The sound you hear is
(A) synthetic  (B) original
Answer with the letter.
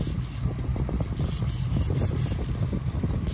B